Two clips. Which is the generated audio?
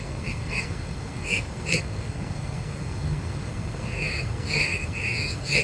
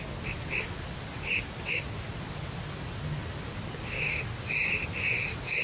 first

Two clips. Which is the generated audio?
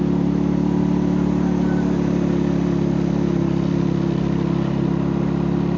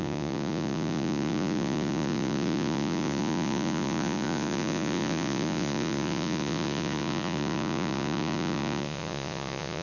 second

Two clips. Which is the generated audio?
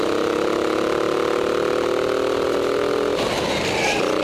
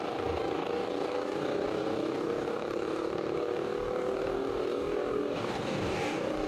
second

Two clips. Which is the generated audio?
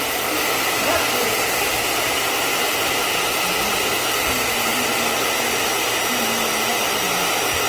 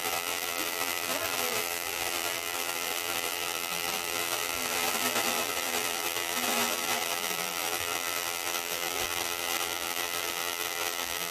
second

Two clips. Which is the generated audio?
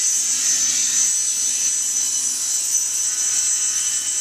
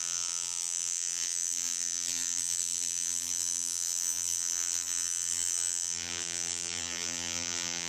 second